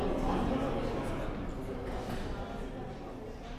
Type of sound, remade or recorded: recorded